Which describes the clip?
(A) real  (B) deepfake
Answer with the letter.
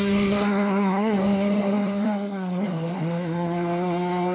B